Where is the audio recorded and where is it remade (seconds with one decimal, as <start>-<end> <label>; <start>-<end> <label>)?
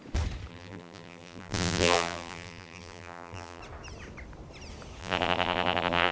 0.0-0.5 recorded; 0.5-3.6 remade; 3.6-5.0 recorded; 5.0-6.1 remade